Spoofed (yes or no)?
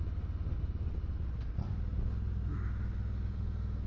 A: no